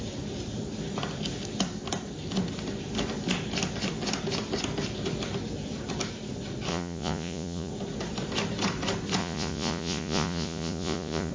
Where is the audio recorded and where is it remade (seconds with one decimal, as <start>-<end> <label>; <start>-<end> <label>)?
0.0-6.7 recorded; 6.7-7.7 remade; 7.7-9.2 recorded; 9.2-11.3 remade